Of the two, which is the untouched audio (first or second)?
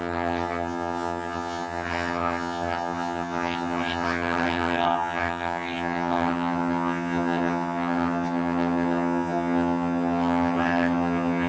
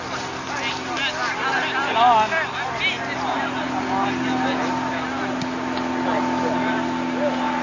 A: second